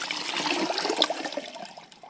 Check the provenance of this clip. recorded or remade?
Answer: recorded